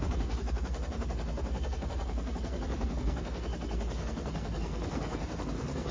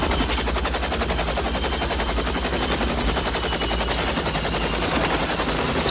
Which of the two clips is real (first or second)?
second